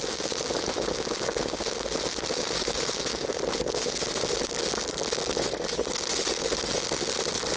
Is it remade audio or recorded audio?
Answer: recorded